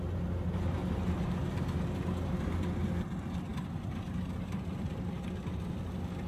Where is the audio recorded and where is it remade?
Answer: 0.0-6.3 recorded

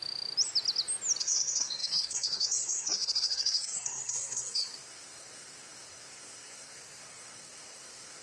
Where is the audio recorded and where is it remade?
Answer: 0.0-1.2 recorded; 1.2-8.2 remade